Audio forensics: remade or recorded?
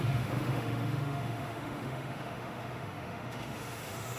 remade